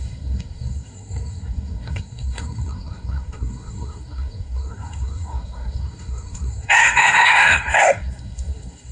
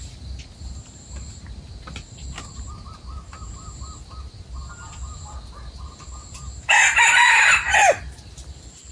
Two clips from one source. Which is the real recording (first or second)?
second